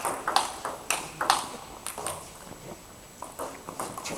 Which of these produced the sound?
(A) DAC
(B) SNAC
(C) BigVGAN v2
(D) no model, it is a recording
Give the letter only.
D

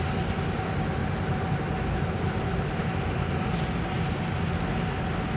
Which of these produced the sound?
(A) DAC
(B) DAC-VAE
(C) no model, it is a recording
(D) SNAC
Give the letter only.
C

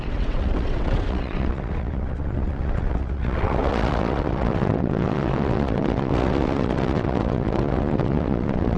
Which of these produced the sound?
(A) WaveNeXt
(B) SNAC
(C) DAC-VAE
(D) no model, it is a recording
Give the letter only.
A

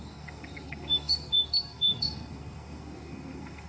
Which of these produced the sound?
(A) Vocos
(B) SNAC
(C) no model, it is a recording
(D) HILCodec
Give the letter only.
B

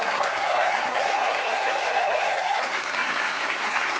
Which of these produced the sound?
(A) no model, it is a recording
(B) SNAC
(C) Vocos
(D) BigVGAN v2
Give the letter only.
B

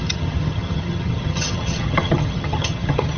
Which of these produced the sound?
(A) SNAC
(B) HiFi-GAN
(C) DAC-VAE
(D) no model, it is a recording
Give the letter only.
B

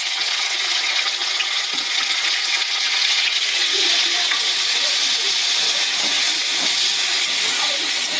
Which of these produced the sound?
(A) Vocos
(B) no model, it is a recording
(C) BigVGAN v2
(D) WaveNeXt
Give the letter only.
D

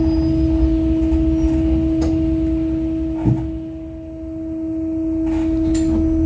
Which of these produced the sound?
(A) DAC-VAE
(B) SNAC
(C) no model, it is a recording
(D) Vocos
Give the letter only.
C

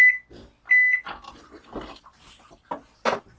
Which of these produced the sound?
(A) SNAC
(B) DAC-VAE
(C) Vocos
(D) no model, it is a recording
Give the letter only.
D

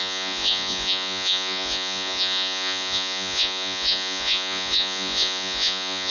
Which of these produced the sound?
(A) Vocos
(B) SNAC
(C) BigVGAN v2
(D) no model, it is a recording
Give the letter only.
A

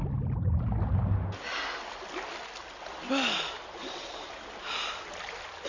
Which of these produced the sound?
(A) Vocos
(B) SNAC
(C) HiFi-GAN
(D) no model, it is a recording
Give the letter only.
D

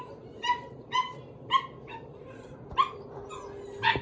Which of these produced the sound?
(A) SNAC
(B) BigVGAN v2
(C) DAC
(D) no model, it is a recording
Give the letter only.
D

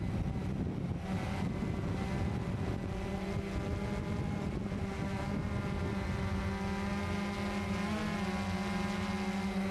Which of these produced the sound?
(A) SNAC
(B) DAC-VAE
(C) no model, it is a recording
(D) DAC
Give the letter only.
C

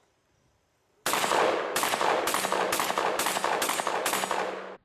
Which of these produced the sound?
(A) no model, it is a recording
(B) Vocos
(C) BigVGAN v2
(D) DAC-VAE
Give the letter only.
A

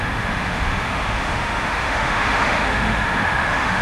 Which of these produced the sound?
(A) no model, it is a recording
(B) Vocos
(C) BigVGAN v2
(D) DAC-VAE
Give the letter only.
D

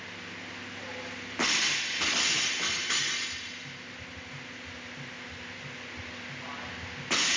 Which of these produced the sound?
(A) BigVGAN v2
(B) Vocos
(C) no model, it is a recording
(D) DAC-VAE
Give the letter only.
C